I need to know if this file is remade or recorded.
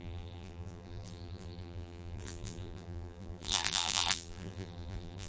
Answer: remade